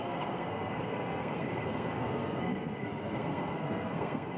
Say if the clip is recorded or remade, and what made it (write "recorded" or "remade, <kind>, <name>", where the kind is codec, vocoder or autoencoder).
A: remade, codec, SNAC